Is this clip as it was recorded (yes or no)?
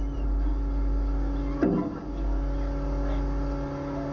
yes